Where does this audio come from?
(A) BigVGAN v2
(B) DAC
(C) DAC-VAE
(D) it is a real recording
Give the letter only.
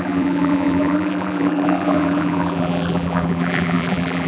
A